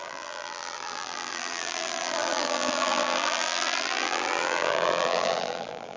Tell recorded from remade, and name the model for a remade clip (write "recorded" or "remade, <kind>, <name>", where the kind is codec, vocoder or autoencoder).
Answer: remade, vocoder, BigVGAN v2